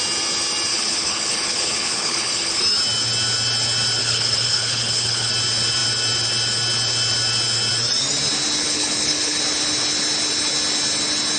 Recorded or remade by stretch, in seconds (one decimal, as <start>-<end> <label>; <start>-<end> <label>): 0.0-0.7 recorded; 0.7-2.6 remade; 2.6-4.0 recorded; 4.0-5.3 remade; 5.3-8.6 recorded; 8.6-9.4 remade; 9.4-11.4 recorded